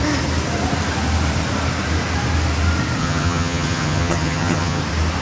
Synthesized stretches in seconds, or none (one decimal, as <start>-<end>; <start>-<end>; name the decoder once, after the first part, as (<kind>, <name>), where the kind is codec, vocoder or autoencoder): 3.0-4.8 (vocoder, HiFi-GAN)